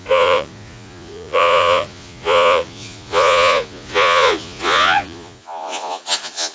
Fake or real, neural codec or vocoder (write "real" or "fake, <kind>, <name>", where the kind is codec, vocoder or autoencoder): fake, vocoder, Vocos